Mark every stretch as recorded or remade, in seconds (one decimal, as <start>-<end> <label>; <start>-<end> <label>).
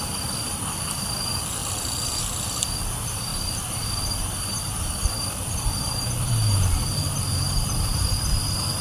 0.0-8.8 recorded